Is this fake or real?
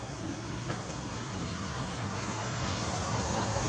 fake